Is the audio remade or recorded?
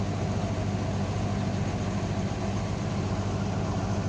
recorded